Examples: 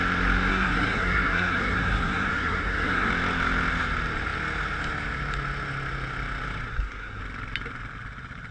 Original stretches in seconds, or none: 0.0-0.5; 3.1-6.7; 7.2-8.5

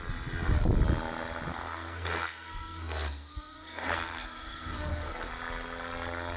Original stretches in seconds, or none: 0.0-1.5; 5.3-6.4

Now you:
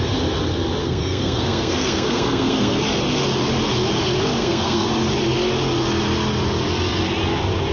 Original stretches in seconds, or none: 0.0-0.8; 2.8-4.4; 4.9-7.7

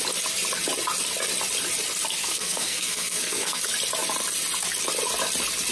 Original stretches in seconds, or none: 0.0-2.2; 3.6-5.7

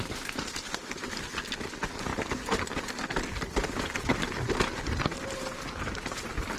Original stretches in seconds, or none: 0.0-6.6

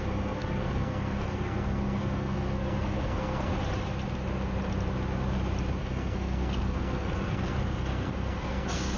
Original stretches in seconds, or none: 3.5-5.8